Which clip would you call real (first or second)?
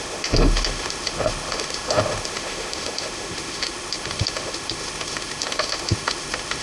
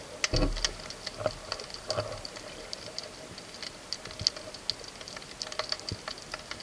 second